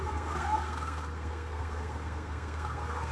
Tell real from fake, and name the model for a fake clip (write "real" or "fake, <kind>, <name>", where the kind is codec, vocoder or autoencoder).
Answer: fake, codec, SNAC